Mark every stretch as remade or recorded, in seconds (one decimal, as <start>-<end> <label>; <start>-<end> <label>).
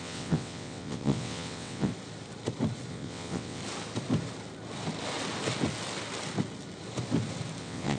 0.0-1.9 remade; 1.9-2.9 recorded; 2.9-3.6 remade; 3.6-7.6 recorded; 7.6-8.0 remade